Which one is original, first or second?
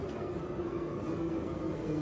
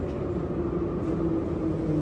second